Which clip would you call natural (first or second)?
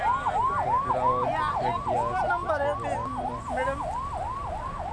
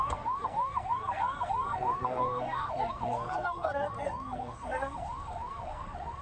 first